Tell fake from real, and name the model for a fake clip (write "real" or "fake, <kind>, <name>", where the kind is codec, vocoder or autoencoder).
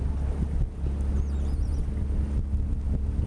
real